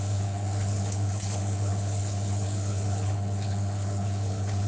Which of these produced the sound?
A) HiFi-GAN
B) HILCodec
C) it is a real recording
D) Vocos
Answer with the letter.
B